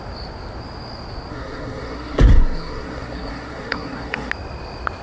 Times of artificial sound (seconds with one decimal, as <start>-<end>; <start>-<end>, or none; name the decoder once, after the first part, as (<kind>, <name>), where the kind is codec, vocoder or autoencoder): 1.3-4.3 (codec, SNAC)